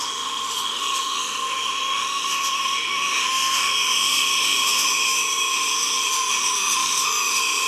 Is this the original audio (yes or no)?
no